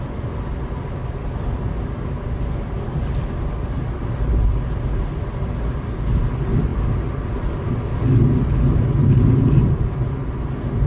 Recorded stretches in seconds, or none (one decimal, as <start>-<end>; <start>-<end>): 0.0-10.9